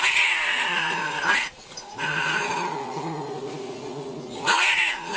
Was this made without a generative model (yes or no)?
no